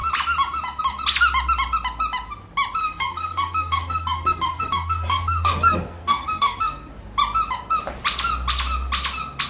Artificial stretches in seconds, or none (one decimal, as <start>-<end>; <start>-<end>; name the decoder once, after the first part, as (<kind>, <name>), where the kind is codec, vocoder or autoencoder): 2.8-6.9 (codec, SNAC)